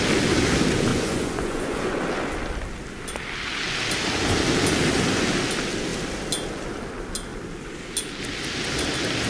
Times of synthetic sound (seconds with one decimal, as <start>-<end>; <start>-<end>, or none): 0.9-2.0

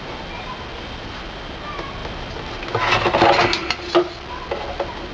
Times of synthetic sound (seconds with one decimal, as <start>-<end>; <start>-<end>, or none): none

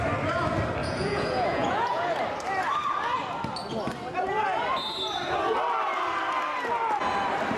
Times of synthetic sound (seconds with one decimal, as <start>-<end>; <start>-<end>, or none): 0.8-2.1

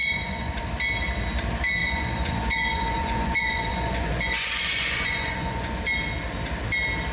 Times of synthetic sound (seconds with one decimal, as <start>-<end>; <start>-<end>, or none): 0.0-0.6; 1.8-5.8